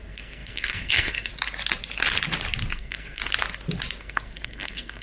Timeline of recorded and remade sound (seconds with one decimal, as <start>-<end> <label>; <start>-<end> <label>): 0.0-1.3 remade; 1.3-2.7 recorded; 2.7-3.2 remade; 3.2-4.0 recorded; 4.0-5.0 remade